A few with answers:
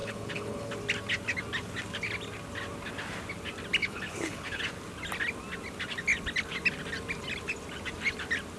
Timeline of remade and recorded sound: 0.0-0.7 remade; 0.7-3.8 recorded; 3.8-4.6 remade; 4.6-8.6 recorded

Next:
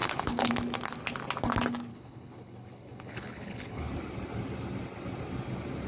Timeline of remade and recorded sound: 0.0-0.5 remade; 0.5-1.9 recorded; 1.9-3.9 remade; 3.9-5.9 recorded

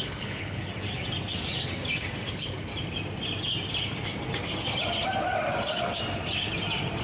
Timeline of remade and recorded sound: 0.0-0.7 remade; 0.7-2.3 recorded; 2.3-2.7 remade; 2.7-7.0 recorded

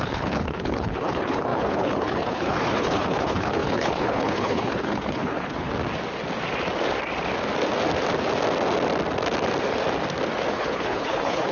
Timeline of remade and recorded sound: 0.0-5.7 remade; 5.7-10.5 recorded; 10.5-11.5 remade

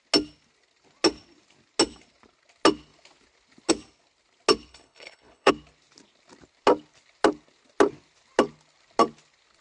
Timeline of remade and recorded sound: 0.0-4.7 recorded; 4.7-5.5 remade; 5.5-9.6 recorded

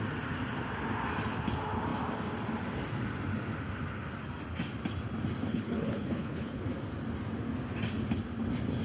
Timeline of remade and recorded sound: 0.0-5.5 recorded; 5.5-6.6 remade; 6.6-8.8 recorded

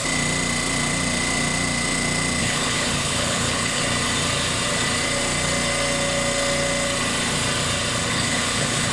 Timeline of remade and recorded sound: 0.0-2.4 recorded; 2.4-3.8 remade; 3.8-8.1 recorded; 8.1-8.9 remade